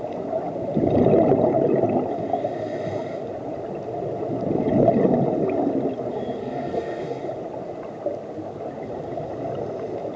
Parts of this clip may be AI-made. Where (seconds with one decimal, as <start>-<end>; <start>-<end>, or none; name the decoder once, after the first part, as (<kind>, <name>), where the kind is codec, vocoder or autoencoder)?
6.4-7.2 (codec, SNAC)

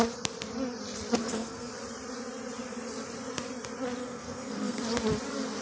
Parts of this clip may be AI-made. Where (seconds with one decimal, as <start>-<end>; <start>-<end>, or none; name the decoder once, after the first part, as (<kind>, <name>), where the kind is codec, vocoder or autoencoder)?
1.2-1.7 (codec, SNAC); 4.0-4.8

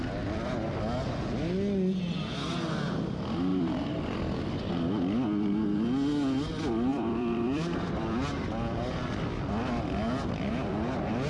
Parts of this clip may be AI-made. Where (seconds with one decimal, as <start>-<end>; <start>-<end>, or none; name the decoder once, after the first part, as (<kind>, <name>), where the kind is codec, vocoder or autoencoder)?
3.5-4.7 (vocoder, BigVGAN v2); 6.9-8.8

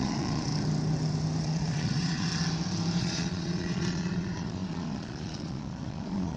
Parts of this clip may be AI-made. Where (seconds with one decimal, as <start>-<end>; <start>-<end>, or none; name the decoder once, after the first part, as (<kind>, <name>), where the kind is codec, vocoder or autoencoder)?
0.0-0.5 (vocoder, Vocos); 1.4-2.3; 3.0-6.4